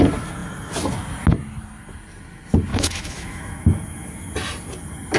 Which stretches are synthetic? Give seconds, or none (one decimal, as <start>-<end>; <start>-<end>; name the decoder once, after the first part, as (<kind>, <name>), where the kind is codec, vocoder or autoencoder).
2.7-4.3 (autoencoder, DAC-VAE)